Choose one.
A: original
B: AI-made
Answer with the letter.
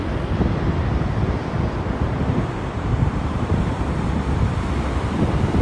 B